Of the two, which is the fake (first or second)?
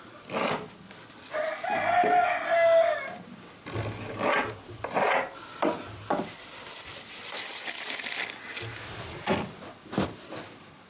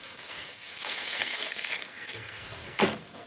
second